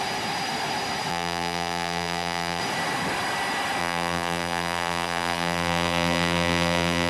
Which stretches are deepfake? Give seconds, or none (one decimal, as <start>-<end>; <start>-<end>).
1.1-2.6; 3.8-7.1